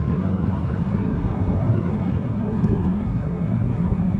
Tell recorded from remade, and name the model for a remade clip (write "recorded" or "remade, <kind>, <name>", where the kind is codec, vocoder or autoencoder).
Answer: remade, codec, SNAC